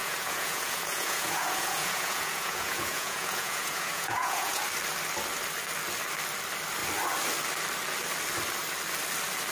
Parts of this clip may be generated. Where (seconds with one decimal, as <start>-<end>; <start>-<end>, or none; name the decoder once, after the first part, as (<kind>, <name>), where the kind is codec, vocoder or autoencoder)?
0.0-4.6 (vocoder, Vocos)